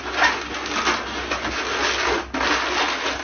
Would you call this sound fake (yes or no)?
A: no